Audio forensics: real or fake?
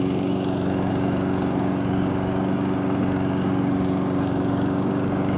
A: fake